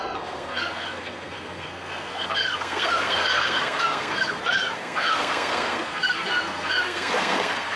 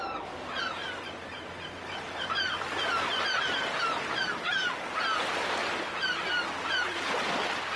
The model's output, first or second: first